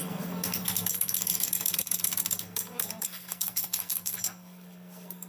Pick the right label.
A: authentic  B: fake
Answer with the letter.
B